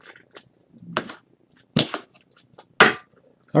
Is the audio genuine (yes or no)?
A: yes